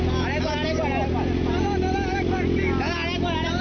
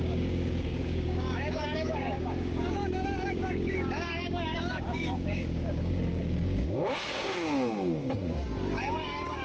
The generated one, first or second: second